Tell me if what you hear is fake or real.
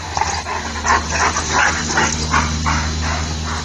real